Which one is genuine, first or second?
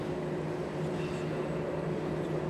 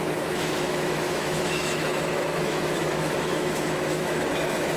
first